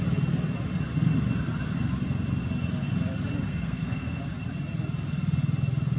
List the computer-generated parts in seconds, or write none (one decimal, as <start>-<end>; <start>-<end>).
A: 3.5-4.2